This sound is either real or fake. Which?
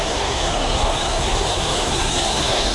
fake